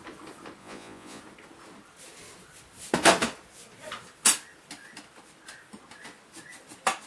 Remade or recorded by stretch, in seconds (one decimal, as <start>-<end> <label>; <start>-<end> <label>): 0.0-0.6 recorded; 0.6-1.2 remade; 1.2-7.1 recorded